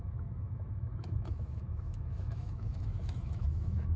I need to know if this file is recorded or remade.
remade